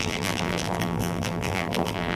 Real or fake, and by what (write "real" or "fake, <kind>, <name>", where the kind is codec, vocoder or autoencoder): fake, vocoder, BigVGAN v2